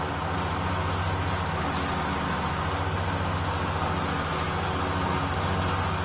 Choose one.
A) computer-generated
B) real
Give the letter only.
B